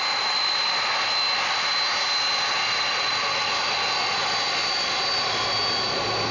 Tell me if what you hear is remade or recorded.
recorded